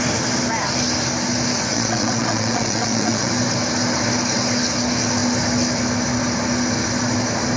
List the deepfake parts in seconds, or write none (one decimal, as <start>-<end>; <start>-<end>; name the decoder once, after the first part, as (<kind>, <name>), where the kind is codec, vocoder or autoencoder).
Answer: 1.7-3.3 (vocoder, Vocos)